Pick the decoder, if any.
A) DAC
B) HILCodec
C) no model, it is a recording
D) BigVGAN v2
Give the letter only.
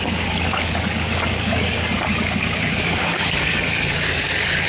A